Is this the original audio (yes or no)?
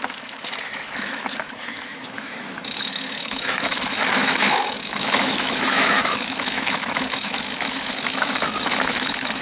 no